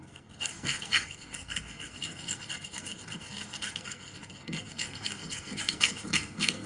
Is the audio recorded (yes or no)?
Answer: no